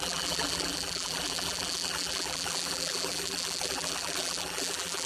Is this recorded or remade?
remade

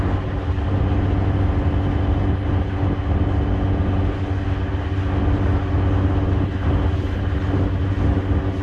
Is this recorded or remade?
recorded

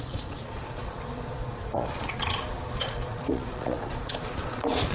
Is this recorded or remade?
remade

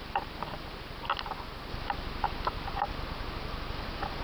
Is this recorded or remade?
recorded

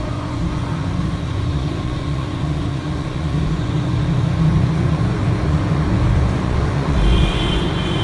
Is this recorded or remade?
remade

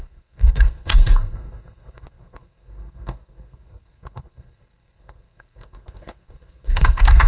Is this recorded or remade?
remade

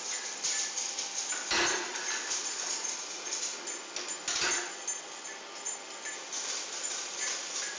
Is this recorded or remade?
recorded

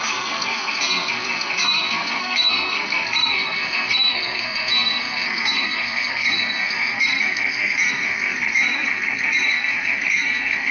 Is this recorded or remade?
remade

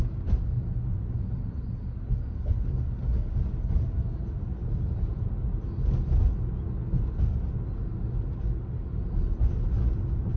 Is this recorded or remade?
recorded